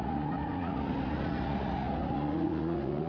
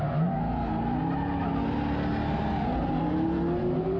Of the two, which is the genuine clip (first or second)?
second